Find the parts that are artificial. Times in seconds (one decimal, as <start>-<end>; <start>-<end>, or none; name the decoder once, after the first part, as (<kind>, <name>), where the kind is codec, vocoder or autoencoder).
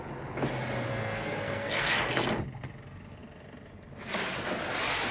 0.9-2.1 (codec, SNAC)